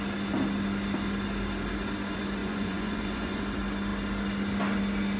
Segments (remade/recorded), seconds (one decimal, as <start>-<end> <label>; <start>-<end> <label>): 0.0-2.4 recorded; 2.4-3.4 remade; 3.4-5.2 recorded